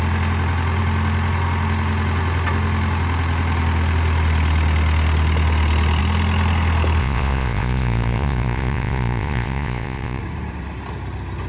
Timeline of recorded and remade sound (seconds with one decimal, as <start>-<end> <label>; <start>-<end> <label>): 0.0-7.0 recorded; 7.0-10.2 remade; 10.2-11.5 recorded